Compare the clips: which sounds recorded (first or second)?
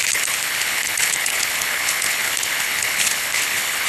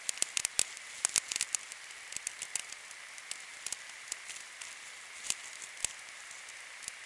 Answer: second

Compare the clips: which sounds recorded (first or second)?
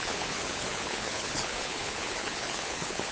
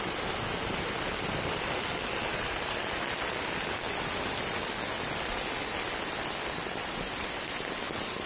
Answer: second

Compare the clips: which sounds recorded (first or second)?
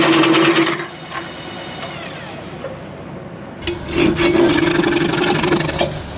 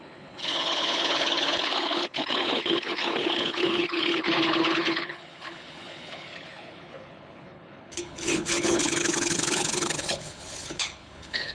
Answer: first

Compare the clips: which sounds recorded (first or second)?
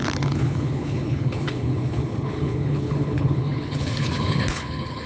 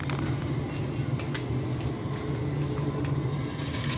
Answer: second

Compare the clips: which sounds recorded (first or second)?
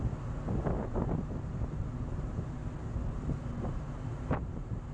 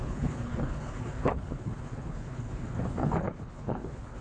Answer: first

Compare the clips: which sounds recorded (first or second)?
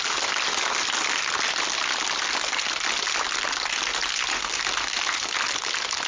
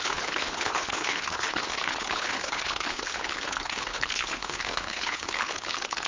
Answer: first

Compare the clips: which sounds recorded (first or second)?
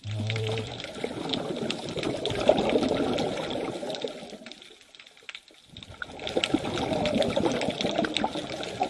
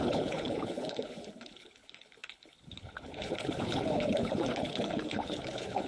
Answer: first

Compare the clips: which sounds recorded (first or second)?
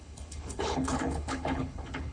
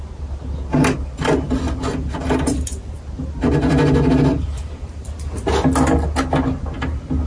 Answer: second